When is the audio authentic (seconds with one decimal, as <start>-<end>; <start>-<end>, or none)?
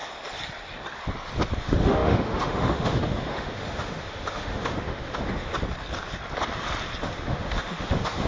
0.0-1.6; 5.5-7.0